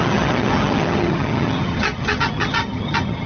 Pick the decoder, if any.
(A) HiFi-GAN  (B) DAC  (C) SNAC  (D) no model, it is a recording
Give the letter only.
A